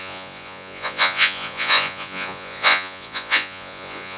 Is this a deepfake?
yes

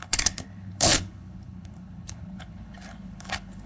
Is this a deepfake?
yes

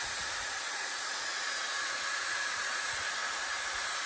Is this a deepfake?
yes